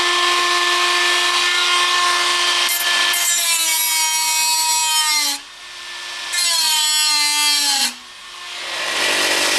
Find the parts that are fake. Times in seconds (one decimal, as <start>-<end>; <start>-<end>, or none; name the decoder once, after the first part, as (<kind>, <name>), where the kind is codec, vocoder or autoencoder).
none